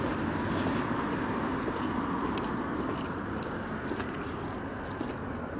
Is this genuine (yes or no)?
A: yes